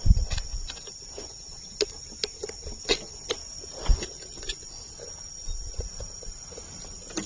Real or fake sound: real